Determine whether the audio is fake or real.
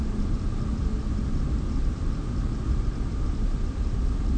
real